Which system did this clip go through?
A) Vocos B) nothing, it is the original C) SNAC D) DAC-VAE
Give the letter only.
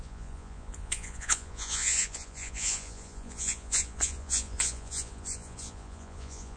A